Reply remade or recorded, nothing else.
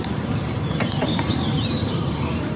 remade